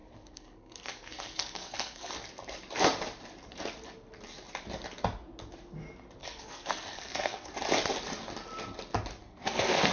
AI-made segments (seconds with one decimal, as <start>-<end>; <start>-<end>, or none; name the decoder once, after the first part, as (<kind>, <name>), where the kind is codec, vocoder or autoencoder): 0.0-2.1 (codec, SNAC); 6.2-7.5; 9.2-9.9